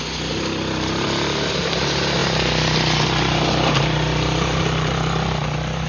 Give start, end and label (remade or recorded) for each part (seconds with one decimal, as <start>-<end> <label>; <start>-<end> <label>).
0.0-5.9 recorded